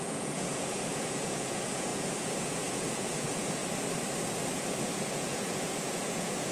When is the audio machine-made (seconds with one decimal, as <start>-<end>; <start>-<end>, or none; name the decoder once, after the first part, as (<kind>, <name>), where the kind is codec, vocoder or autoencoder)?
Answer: 0.0-3.6 (vocoder, Vocos); 4.9-6.5